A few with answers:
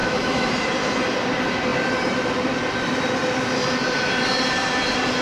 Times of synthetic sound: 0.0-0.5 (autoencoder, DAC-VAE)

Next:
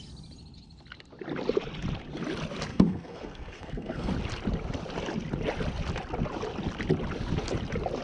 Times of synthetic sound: 2.7-4.1 (codec, SNAC)

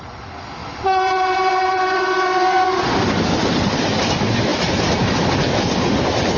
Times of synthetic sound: 0.6-3.9 (vocoder, BigVGAN v2); 4.5-5.9

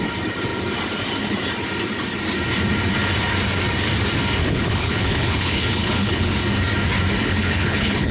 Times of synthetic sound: 4.4-6.3 (codec, HILCodec); 7.2-8.1

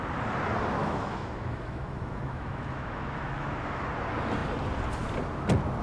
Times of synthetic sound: 0.8-3.8 (autoencoder, DAC-VAE)

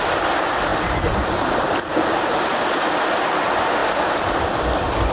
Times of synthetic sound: 0.7-1.5 (vocoder, BigVGAN v2); 3.8-5.1

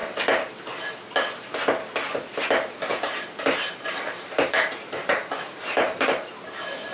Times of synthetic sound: 2.9-6.3 (vocoder, BigVGAN v2)